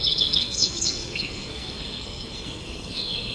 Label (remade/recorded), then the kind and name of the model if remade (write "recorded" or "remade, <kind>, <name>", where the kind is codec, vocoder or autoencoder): remade, codec, SNAC